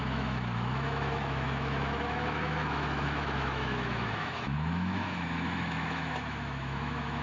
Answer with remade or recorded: remade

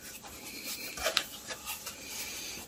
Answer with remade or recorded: recorded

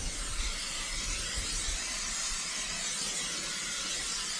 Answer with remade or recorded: recorded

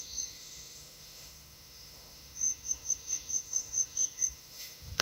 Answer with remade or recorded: remade